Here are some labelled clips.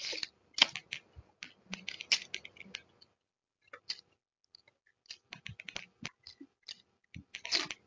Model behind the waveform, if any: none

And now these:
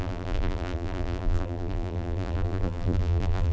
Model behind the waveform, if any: vocoder, BigVGAN v2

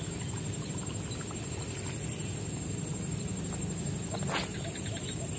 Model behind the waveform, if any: none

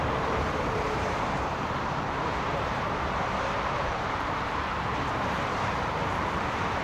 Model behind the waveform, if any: vocoder, BigVGAN v2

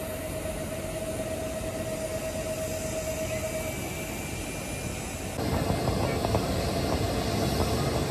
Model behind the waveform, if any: none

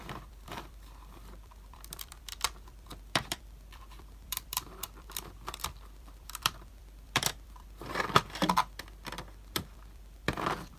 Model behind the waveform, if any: vocoder, BigVGAN v2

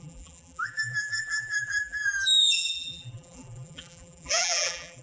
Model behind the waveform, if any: vocoder, BigVGAN v2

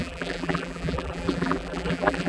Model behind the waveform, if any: vocoder, BigVGAN v2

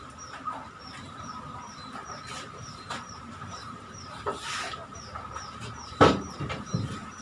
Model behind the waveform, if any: vocoder, BigVGAN v2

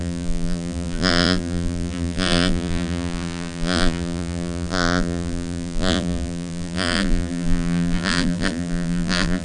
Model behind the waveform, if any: vocoder, BigVGAN v2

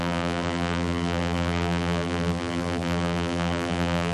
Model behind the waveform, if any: vocoder, BigVGAN v2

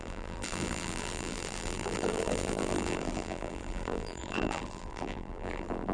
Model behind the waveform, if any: vocoder, BigVGAN v2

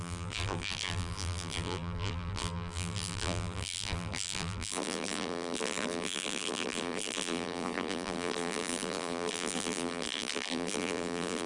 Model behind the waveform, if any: vocoder, BigVGAN v2